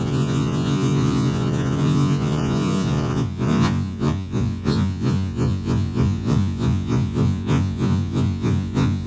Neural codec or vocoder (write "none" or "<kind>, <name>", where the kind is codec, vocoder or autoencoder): vocoder, Vocos